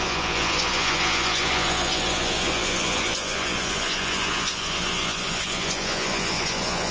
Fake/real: fake